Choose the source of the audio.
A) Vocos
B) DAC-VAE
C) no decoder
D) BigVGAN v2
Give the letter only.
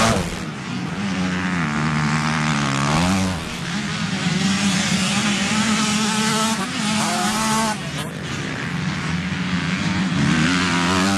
C